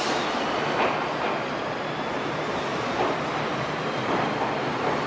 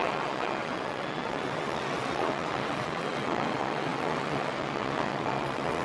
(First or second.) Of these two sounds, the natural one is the first